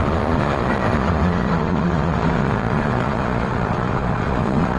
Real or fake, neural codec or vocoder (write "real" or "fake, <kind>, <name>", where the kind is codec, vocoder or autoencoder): fake, vocoder, Vocos